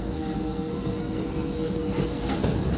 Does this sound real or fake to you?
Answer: fake